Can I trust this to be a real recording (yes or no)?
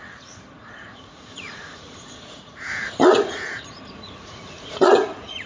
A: no